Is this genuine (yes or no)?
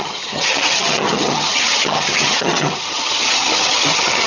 no